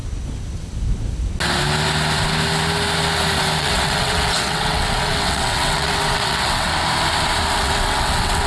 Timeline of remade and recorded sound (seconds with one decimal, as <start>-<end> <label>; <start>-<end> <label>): 0.0-3.6 recorded; 3.6-6.7 remade; 6.7-7.5 recorded; 7.5-8.5 remade